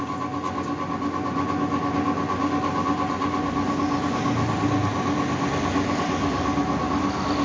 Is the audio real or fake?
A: real